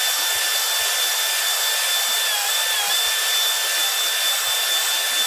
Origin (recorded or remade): recorded